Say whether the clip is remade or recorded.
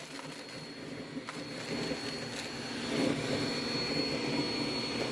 recorded